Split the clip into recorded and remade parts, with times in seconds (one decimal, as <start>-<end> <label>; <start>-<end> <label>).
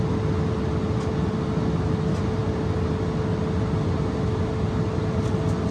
0.0-5.7 recorded